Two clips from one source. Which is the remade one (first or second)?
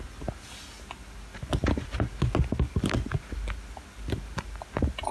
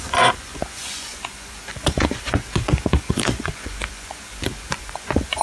second